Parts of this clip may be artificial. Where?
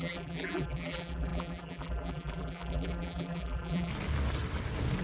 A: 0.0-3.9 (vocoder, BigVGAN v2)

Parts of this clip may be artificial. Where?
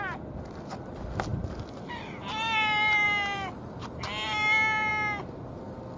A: none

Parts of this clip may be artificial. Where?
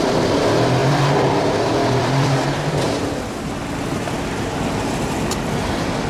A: 0.0-3.0 (vocoder, BigVGAN v2)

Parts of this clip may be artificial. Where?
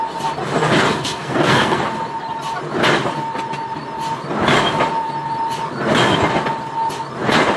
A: 0.8-1.8 (codec, SNAC)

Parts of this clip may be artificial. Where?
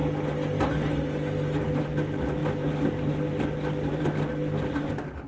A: none